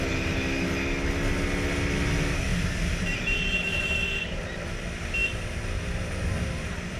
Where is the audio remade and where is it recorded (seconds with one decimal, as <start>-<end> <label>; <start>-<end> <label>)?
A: 0.0-2.5 recorded; 2.5-4.4 remade; 4.4-7.0 recorded